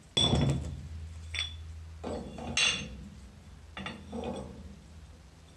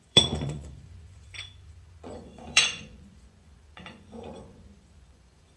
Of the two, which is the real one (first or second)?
first